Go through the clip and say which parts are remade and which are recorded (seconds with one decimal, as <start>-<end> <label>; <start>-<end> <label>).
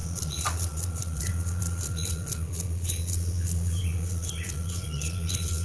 0.0-5.6 remade